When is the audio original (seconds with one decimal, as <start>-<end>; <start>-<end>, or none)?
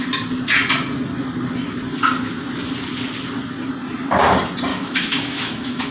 0.0-4.7